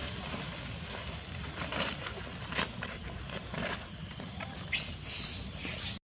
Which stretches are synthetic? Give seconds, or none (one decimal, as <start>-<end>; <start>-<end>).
none